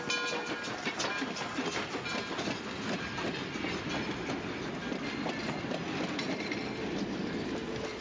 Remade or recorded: recorded